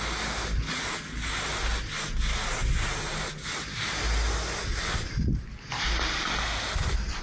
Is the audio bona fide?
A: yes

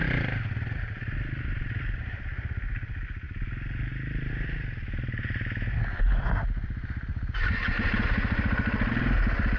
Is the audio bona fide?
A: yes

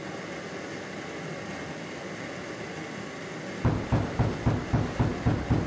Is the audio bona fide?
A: yes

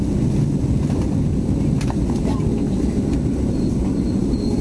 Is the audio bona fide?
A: yes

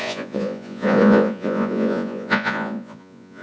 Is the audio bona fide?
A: no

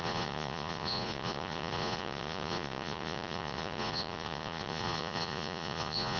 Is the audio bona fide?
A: no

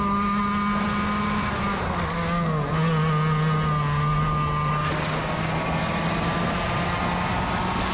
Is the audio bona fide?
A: yes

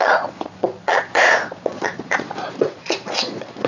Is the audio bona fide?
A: no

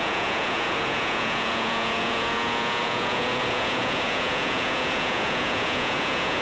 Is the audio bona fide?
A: no